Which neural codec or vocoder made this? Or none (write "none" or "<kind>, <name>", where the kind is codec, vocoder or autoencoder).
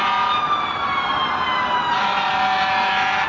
none